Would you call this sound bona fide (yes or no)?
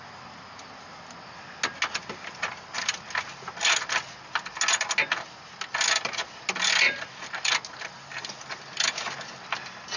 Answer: yes